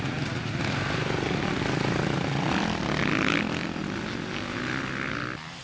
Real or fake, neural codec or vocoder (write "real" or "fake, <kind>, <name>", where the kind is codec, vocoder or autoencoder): real